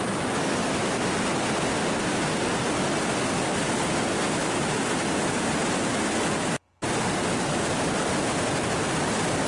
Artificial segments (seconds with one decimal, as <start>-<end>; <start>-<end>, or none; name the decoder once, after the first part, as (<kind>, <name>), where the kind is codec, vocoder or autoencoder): 4.4-5.2 (vocoder, BigVGAN v2)

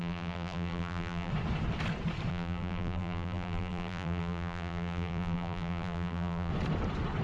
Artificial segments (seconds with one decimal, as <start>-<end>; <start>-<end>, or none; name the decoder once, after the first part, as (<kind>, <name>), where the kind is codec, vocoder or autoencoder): 0.0-1.3 (vocoder, BigVGAN v2); 2.3-6.5

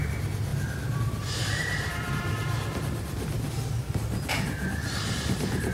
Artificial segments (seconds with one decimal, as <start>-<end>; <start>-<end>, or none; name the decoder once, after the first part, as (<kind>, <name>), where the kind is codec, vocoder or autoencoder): 0.5-3.5 (vocoder, BigVGAN v2)

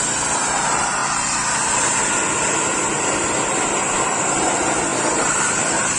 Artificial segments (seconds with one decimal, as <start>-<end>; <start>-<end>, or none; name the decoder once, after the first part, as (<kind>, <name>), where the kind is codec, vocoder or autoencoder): 0.0-1.0 (vocoder, BigVGAN v2); 4.0-6.0

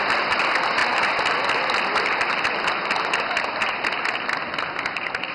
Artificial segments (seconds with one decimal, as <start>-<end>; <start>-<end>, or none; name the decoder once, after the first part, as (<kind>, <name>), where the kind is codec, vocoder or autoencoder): none